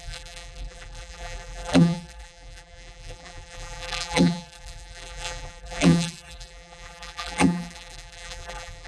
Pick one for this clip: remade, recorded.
remade